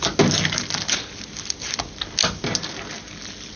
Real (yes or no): yes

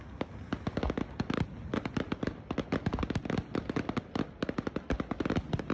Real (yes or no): yes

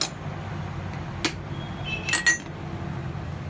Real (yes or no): yes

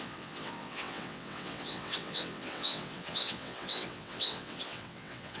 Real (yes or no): no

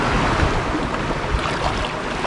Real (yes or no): yes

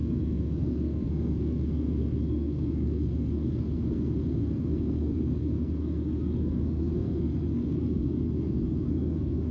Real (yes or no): no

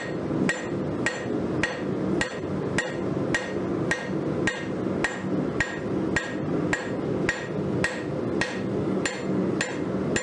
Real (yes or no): yes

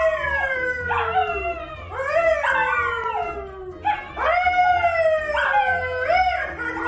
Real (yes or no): yes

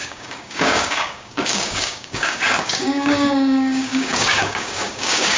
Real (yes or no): no